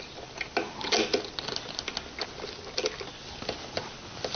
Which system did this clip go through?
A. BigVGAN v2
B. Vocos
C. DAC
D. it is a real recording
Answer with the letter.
D